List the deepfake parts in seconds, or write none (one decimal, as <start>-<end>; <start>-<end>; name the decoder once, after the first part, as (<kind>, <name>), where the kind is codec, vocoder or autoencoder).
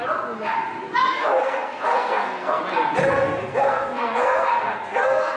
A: 1.0-2.6 (codec, SNAC); 3.0-5.4